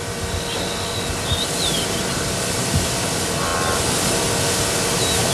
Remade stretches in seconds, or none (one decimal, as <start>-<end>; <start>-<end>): none